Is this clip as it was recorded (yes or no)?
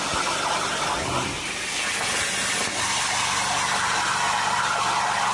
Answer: yes